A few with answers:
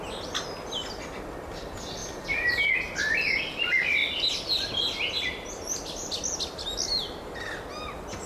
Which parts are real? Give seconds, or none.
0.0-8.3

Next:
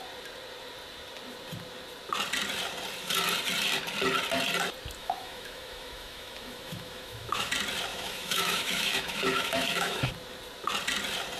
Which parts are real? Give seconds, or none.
0.0-5.0; 7.5-7.9; 10.1-11.4

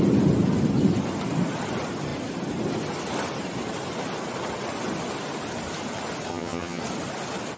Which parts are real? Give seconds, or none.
0.0-6.3; 6.8-7.6